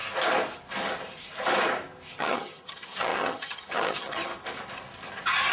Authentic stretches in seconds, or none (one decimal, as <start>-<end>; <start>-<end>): 0.0-2.2; 4.3-5.5